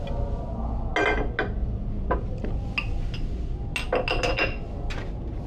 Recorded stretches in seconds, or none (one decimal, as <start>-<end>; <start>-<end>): 0.0-5.5